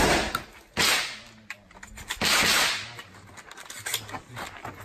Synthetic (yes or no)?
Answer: no